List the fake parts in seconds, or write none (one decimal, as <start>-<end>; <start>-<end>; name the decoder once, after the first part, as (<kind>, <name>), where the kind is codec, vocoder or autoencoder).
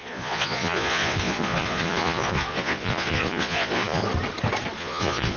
0.0-4.0 (vocoder, Vocos); 4.8-5.4